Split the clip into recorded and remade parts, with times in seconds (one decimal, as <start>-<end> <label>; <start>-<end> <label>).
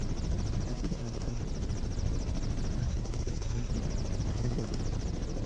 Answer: 0.0-0.7 recorded; 0.7-1.4 remade; 1.4-2.8 recorded; 2.8-3.7 remade; 3.7-4.3 recorded; 4.3-4.8 remade; 4.8-5.5 recorded